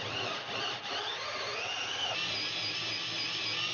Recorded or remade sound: recorded